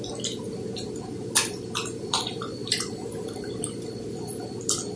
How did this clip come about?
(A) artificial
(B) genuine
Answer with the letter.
B